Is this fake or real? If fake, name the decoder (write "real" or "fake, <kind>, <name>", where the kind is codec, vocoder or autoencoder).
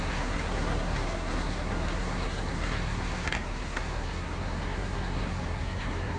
fake, codec, SNAC